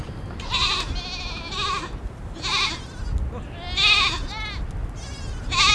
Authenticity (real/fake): real